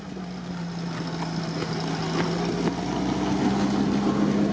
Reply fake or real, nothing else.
real